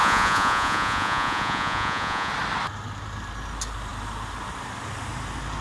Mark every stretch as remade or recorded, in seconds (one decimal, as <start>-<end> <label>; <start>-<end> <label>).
0.0-2.3 remade; 2.3-5.6 recorded